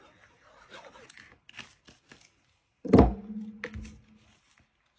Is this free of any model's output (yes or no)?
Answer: yes